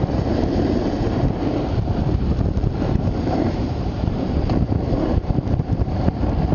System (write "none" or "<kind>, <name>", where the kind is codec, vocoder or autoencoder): vocoder, BigVGAN v2